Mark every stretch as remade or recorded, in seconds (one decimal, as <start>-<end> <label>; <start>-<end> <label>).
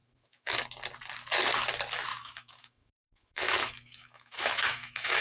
0.0-0.6 remade; 0.6-2.1 recorded; 2.1-5.2 remade